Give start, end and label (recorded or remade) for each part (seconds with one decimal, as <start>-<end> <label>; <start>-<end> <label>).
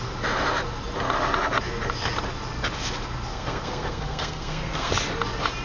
0.0-3.3 recorded; 3.3-4.9 remade; 4.9-5.6 recorded